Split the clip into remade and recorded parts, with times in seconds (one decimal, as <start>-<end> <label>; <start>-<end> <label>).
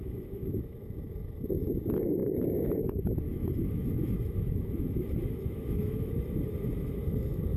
0.0-7.6 remade